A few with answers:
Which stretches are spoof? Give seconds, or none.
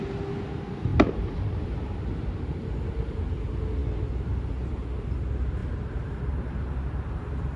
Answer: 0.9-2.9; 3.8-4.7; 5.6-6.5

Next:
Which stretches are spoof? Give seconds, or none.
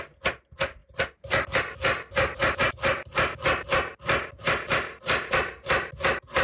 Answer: none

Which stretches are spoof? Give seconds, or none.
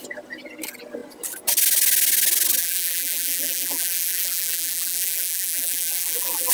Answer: 2.6-6.5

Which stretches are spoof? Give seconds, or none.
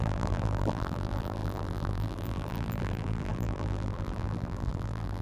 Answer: 0.0-5.2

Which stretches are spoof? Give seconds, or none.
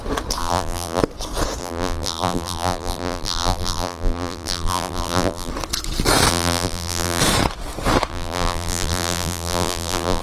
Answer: 0.4-1.0; 1.6-5.5; 6.3-7.2; 8.1-10.2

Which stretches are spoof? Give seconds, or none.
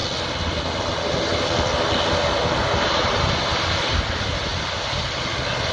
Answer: 0.6-1.3; 3.0-4.5